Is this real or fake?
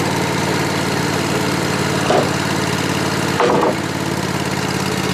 real